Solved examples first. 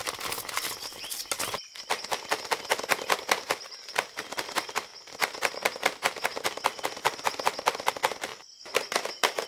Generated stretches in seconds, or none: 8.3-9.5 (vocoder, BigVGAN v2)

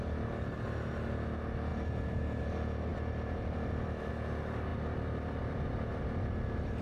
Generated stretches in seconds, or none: 2.9-4.1 (vocoder, BigVGAN v2); 4.7-6.0

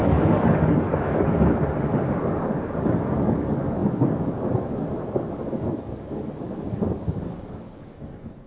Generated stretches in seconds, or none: 0.0-8.5 (codec, DAC)